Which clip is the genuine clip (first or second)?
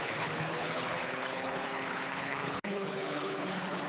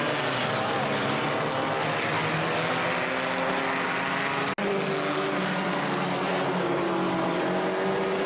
second